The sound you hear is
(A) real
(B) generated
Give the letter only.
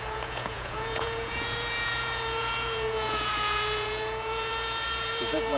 B